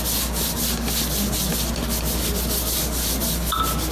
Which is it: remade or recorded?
recorded